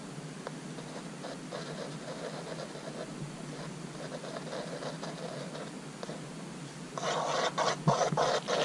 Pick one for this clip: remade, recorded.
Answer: recorded